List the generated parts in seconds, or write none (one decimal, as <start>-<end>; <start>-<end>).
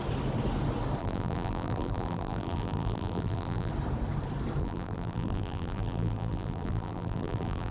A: 1.0-3.7; 4.6-7.7